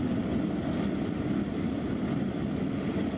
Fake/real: real